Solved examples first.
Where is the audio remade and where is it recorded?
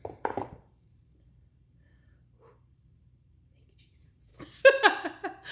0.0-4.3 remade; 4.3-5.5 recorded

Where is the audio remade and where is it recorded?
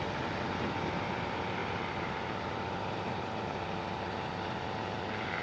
0.0-5.4 remade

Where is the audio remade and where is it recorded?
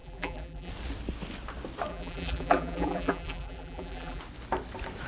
0.0-0.7 remade; 0.7-1.9 recorded; 1.9-4.2 remade; 4.2-5.1 recorded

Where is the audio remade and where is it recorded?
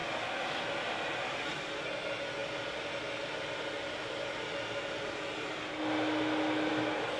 0.0-7.2 recorded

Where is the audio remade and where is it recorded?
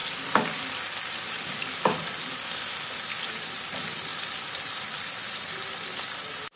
0.0-6.6 remade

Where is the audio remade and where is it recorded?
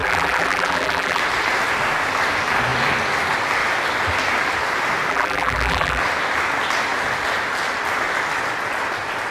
0.0-1.2 remade; 1.2-5.1 recorded; 5.1-6.0 remade; 6.0-9.3 recorded